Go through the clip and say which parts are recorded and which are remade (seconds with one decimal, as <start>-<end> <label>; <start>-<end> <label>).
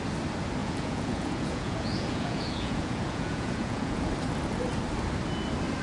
0.0-0.6 recorded; 0.6-4.1 remade; 4.1-5.8 recorded